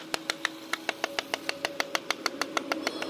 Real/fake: real